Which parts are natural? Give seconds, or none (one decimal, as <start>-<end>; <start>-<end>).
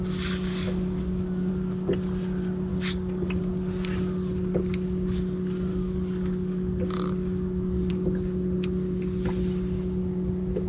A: 0.0-0.5; 1.5-2.7; 3.4-5.7; 7.9-10.7